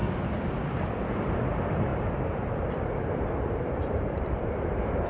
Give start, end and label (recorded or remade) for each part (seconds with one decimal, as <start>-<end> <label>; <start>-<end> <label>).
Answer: 0.0-0.5 remade; 0.5-1.9 recorded; 1.9-5.1 remade

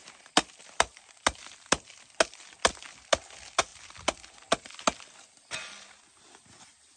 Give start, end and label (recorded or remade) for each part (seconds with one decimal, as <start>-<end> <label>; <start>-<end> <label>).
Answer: 0.0-7.0 recorded

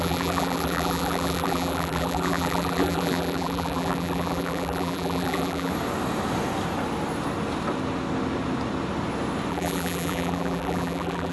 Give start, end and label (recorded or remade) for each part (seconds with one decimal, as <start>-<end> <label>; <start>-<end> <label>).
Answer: 0.0-5.7 remade; 5.7-9.5 recorded; 9.5-11.3 remade

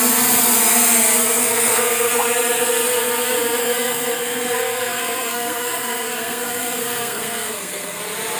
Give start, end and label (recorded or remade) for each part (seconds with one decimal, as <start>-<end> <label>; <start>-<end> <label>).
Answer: 0.0-1.4 recorded; 1.4-2.1 remade; 2.1-3.6 recorded; 3.6-8.0 remade; 8.0-8.4 recorded

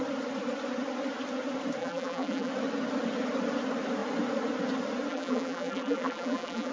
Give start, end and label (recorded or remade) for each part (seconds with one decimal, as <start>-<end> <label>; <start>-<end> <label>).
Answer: 0.0-1.8 recorded; 1.8-2.5 remade; 2.5-5.1 recorded; 5.1-6.7 remade

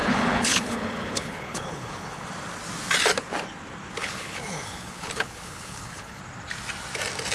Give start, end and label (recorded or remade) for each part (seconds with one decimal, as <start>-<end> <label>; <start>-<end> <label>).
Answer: 0.0-2.3 remade; 2.3-4.0 recorded; 4.0-6.2 remade; 6.2-7.3 recorded

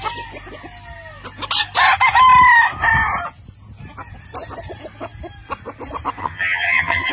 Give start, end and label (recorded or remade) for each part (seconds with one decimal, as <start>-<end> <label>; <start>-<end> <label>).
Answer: 0.0-6.2 recorded; 6.2-7.1 remade

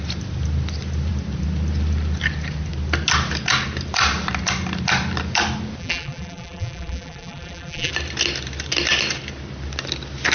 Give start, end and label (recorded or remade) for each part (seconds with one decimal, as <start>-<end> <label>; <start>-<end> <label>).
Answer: 0.0-5.8 recorded; 5.8-7.9 remade; 7.9-10.3 recorded